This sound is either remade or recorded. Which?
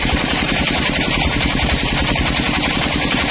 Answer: remade